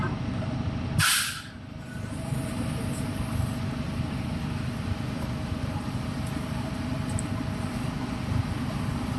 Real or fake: real